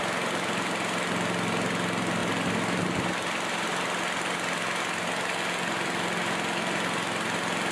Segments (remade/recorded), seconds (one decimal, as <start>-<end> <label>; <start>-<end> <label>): 0.0-7.7 recorded